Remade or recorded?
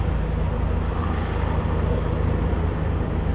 recorded